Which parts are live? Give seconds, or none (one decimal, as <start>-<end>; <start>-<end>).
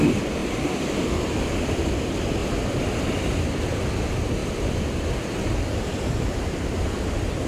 0.0-0.4; 1.4-2.4; 3.4-4.4; 6.5-7.5